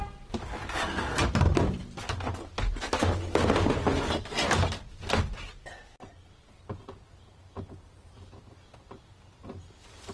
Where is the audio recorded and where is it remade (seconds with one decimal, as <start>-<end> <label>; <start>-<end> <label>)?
0.0-10.1 recorded